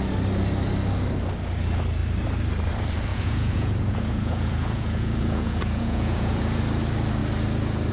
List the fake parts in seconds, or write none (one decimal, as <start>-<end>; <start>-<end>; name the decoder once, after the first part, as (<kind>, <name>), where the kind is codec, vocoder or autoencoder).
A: 3.1-6.6 (vocoder, Vocos)